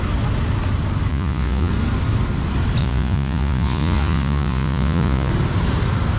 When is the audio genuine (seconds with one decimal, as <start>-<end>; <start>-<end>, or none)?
0.0-1.1; 1.7-2.8; 5.3-6.2